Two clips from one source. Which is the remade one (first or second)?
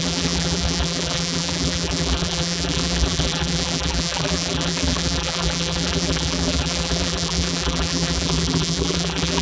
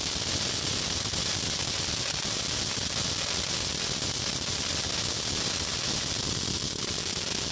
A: first